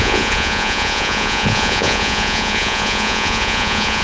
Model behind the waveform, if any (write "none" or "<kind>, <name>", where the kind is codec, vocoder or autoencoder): vocoder, Vocos